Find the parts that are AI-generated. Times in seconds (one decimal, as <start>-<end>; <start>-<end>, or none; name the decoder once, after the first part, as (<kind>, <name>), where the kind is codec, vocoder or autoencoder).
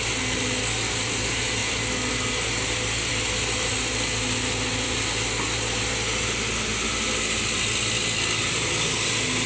none